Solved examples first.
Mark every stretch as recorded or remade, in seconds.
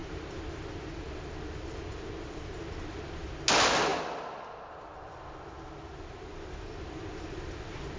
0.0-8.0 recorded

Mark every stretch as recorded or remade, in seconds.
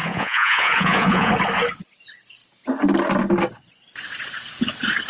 0.0-1.3 remade; 1.3-5.1 recorded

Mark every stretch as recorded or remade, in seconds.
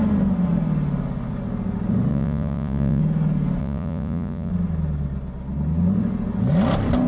0.0-2.1 recorded; 2.1-3.0 remade; 3.0-3.6 recorded; 3.6-4.5 remade; 4.5-7.1 recorded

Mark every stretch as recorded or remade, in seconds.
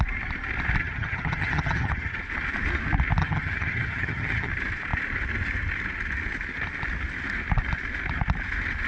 0.0-0.8 recorded; 0.8-2.2 remade; 2.2-3.2 recorded; 3.2-4.5 remade; 4.5-8.9 recorded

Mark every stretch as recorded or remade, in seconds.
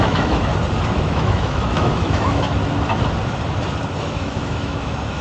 0.0-0.5 remade; 0.5-1.0 recorded; 1.0-2.6 remade; 2.6-4.0 recorded; 4.0-5.2 remade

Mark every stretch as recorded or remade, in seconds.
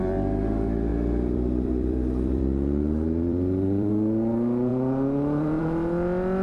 0.0-0.9 recorded; 0.9-3.9 remade; 3.9-6.4 recorded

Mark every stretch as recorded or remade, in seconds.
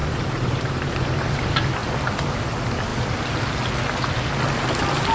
0.0-1.1 remade; 1.1-5.1 recorded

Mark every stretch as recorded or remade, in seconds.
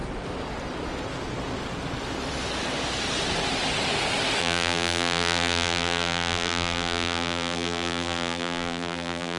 0.0-4.4 recorded; 4.4-9.4 remade